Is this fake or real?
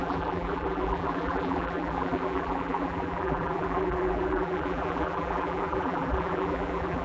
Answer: fake